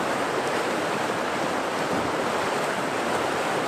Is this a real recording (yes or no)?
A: yes